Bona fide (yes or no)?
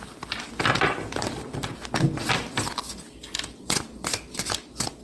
yes